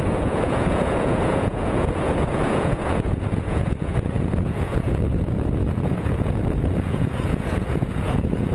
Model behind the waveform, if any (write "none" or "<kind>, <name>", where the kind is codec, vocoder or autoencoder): vocoder, Vocos